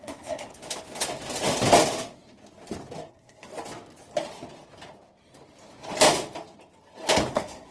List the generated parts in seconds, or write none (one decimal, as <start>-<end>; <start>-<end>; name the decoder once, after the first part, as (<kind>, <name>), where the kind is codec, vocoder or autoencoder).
0.0-0.5 (codec, SNAC); 3.1-3.5; 7.3-7.7